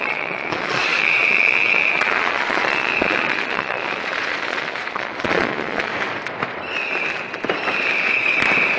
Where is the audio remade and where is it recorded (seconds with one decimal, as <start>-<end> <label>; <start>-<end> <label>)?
0.0-5.9 remade; 5.9-8.8 recorded